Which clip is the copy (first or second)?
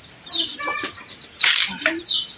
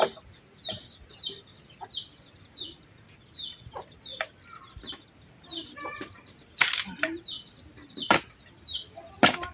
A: first